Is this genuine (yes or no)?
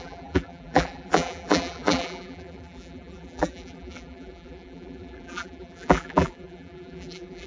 no